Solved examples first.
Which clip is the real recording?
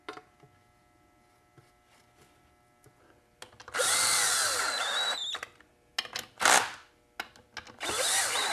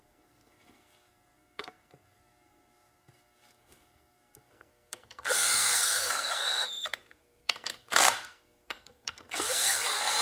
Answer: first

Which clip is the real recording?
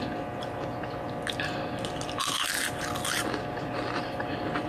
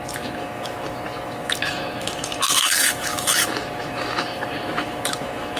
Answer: first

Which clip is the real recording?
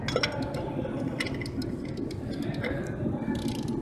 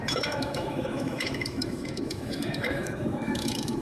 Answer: first